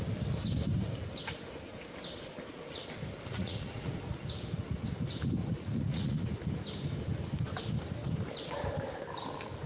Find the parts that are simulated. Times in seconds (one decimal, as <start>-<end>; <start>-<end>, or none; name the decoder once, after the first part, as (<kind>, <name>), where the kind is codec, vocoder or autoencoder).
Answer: 3.4-3.9 (vocoder, Vocos); 5.4-6.3